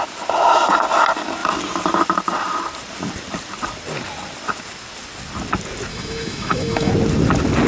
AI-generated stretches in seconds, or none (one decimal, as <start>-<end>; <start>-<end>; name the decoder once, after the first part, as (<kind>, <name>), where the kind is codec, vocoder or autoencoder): 5.9-6.9 (autoencoder, DAC-VAE)